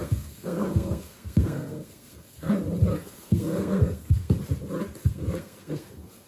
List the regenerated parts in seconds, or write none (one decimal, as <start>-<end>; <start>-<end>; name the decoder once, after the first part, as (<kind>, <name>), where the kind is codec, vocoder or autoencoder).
0.0-2.5 (codec, SNAC); 2.9-4.3; 5.0-6.3